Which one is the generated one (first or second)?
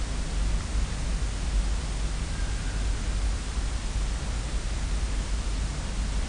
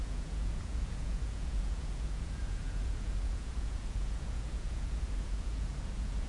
second